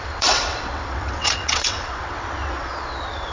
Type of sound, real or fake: fake